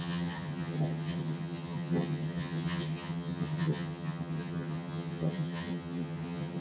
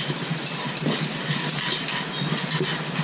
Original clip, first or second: second